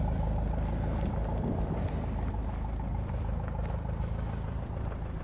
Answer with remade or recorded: remade